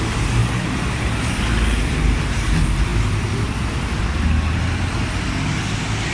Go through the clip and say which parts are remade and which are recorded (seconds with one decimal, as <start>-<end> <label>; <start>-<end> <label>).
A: 0.0-6.1 recorded